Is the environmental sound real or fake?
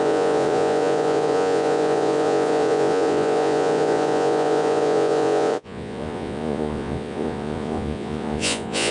fake